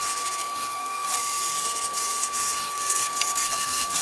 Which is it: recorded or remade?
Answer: remade